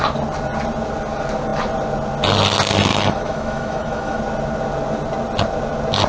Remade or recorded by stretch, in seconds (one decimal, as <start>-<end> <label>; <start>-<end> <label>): 0.0-2.9 recorded; 2.9-4.2 remade; 4.2-6.1 recorded